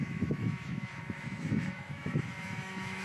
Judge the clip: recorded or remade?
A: remade